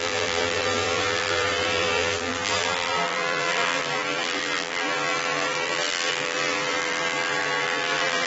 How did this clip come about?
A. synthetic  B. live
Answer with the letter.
A